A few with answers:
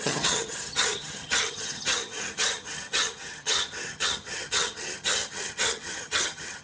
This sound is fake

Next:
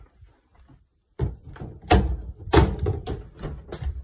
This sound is real